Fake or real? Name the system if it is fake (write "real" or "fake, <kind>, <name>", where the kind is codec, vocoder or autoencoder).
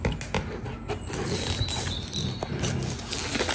real